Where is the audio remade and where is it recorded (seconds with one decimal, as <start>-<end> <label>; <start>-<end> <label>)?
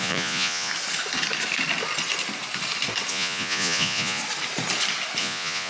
0.0-0.7 remade; 0.7-3.1 recorded; 3.1-4.2 remade; 4.2-5.2 recorded; 5.2-5.7 remade